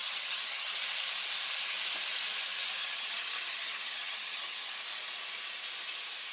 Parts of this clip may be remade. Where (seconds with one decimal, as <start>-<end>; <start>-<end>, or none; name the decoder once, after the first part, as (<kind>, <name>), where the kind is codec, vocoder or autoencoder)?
0.0-0.7 (vocoder, HiFi-GAN); 2.8-4.7